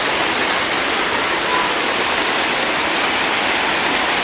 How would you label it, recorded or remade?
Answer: recorded